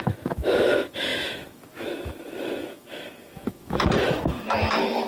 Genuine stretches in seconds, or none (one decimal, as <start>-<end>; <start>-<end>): none